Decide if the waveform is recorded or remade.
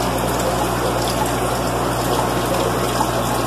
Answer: recorded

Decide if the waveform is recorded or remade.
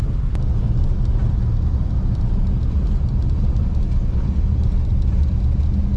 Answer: recorded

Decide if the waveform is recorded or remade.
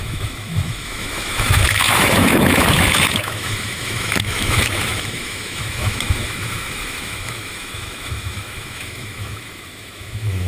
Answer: remade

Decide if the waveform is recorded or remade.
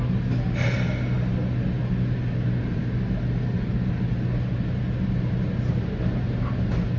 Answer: recorded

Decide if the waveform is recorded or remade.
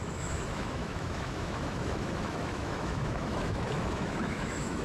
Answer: remade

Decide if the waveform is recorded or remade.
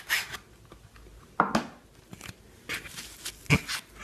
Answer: recorded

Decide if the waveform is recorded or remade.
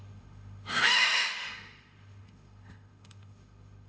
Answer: remade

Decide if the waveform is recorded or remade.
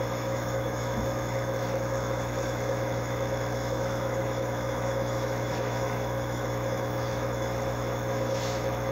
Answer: remade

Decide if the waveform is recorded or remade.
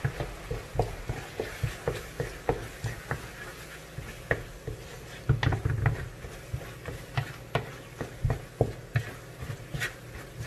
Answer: recorded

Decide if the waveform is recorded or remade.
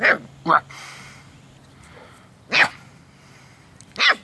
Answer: recorded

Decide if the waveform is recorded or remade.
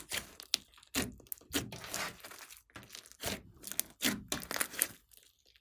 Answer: recorded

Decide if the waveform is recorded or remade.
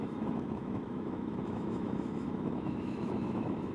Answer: remade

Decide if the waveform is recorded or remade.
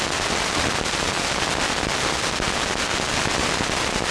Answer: recorded